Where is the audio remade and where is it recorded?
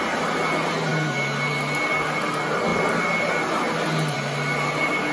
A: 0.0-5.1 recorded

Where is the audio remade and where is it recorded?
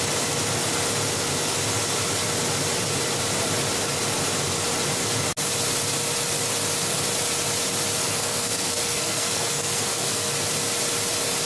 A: 0.0-8.0 recorded; 8.0-10.3 remade; 10.3-11.5 recorded